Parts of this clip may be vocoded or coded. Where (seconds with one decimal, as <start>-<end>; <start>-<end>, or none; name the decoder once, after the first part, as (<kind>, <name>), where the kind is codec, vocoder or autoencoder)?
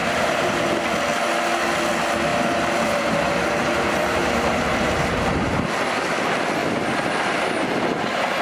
0.0-0.6 (vocoder, BigVGAN v2); 2.3-5.7